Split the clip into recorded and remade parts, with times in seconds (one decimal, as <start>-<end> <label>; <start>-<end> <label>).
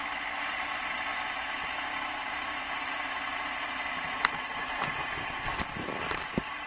0.0-6.7 recorded